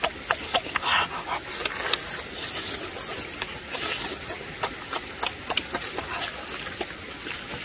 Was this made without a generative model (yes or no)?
yes